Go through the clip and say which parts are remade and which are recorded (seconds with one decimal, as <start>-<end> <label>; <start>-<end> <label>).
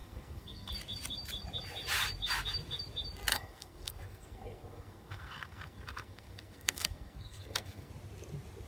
0.0-0.7 remade; 0.7-3.3 recorded; 3.3-7.9 remade; 7.9-8.7 recorded